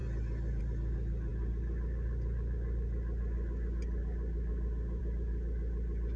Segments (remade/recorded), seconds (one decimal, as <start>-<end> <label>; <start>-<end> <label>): 0.0-6.2 recorded